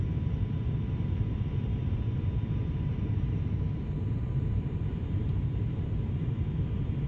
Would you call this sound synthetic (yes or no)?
yes